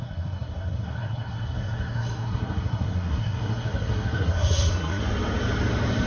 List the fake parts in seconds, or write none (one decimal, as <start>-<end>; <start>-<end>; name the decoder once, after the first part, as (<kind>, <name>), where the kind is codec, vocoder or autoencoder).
0.0-5.0 (codec, SNAC)